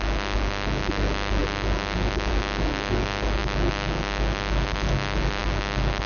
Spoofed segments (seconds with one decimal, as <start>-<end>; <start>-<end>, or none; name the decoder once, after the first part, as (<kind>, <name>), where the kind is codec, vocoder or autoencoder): none